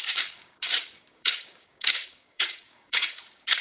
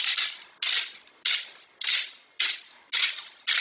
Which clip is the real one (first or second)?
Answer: second